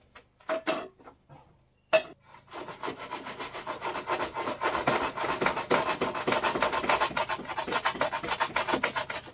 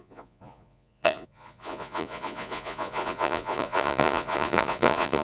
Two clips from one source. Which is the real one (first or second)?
first